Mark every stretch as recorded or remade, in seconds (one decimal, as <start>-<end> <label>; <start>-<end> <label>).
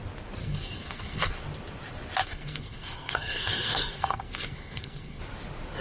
0.0-0.4 recorded; 0.4-1.3 remade; 1.3-2.2 recorded; 2.2-5.2 remade; 5.2-5.8 recorded